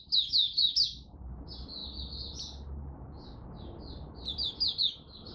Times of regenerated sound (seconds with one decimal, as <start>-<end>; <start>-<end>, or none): none